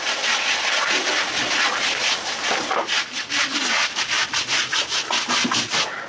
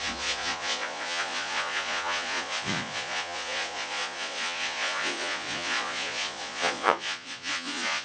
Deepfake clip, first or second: second